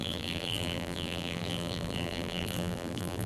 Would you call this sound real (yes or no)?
no